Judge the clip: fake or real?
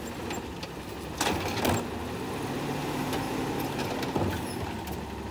real